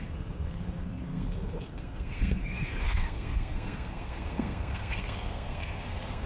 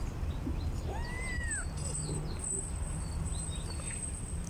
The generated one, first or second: first